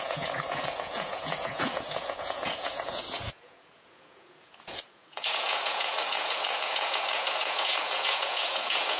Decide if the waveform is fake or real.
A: fake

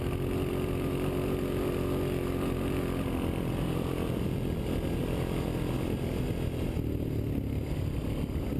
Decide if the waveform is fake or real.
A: real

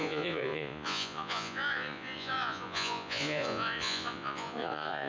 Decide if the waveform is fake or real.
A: fake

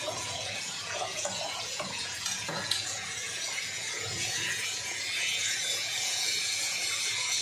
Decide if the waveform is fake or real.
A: fake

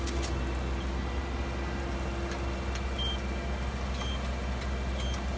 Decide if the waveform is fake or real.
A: real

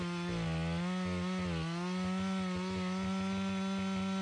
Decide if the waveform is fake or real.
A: real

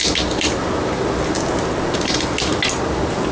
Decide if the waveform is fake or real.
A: real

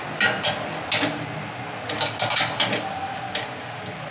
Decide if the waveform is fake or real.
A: real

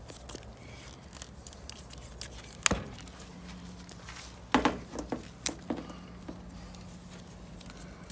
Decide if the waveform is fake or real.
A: real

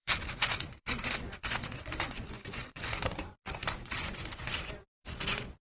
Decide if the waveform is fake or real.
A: fake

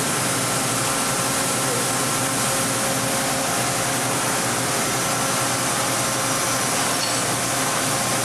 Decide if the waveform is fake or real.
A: real